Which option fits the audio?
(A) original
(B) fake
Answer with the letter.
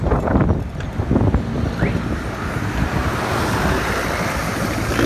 A